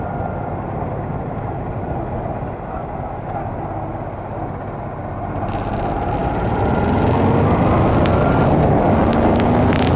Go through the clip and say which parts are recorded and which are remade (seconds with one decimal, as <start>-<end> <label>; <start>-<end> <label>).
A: 0.0-10.0 recorded